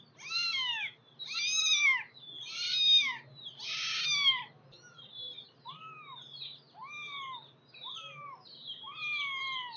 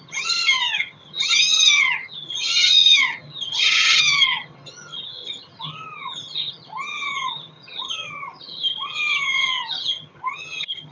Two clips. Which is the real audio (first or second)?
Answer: first